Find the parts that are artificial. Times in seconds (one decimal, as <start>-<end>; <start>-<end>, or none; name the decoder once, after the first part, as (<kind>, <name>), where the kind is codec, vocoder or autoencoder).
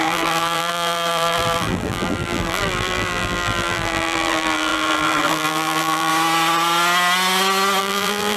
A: 0.0-6.1 (vocoder, BigVGAN v2); 7.8-8.4